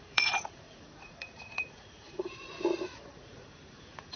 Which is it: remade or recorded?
remade